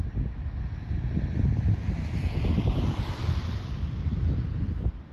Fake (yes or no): no